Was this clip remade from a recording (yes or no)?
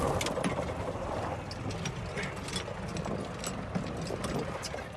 no